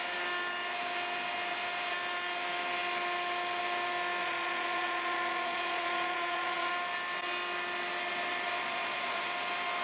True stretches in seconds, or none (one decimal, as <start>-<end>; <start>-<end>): 0.0-4.2; 6.7-8.6; 9.2-9.8